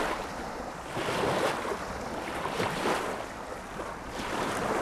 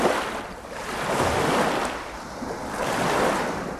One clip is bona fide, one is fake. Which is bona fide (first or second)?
second